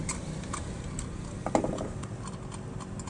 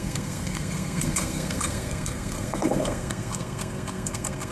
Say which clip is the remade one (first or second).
second